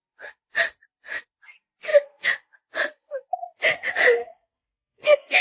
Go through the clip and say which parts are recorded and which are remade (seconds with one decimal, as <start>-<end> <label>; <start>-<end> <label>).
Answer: 0.0-4.2 recorded; 4.2-5.4 remade